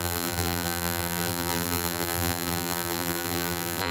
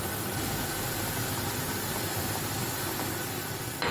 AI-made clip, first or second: first